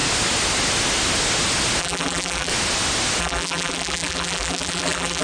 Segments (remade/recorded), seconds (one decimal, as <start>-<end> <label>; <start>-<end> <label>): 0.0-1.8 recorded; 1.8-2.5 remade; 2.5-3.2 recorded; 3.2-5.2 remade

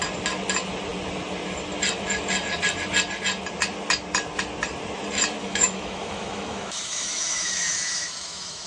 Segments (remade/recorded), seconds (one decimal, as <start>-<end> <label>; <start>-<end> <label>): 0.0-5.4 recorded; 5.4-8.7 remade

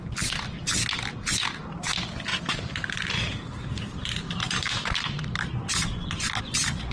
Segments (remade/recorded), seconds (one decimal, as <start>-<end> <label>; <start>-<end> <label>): 0.0-2.3 recorded; 2.3-6.4 remade; 6.4-6.9 recorded